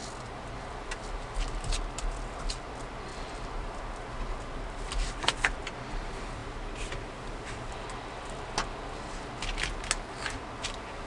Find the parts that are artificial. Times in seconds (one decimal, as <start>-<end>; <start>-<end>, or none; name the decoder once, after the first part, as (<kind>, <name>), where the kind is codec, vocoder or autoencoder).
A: 3.1-3.8 (vocoder, BigVGAN v2)